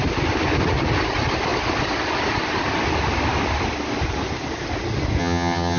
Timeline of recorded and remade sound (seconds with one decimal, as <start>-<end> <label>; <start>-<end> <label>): 0.0-5.2 recorded; 5.2-5.8 remade